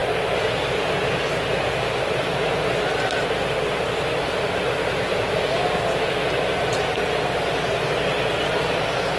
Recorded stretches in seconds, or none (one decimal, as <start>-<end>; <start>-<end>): 0.0-9.2